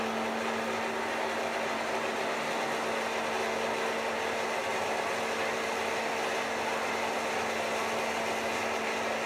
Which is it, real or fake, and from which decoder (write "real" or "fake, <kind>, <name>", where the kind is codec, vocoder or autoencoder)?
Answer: real